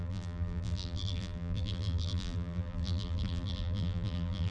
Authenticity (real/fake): fake